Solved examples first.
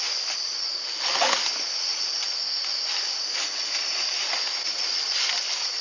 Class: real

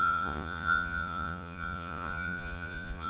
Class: fake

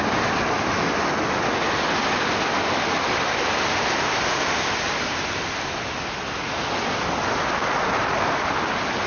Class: real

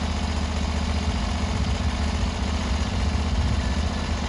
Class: real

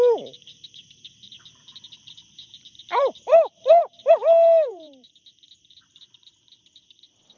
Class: fake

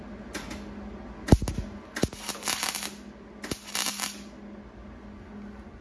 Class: real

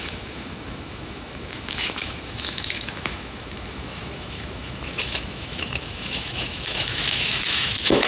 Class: fake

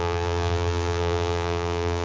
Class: fake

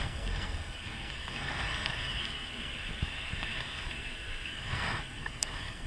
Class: fake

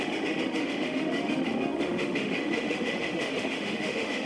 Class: fake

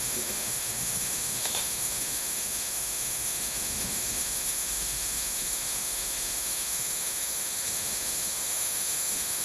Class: fake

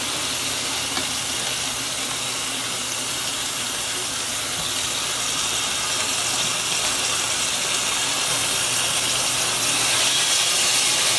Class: real